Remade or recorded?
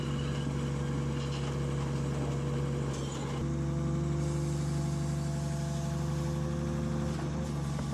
recorded